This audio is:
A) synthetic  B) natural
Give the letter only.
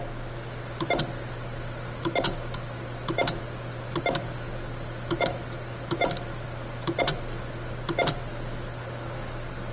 B